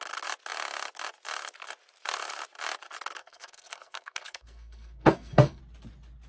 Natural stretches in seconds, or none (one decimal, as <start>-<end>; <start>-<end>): 0.0-3.2; 5.6-6.3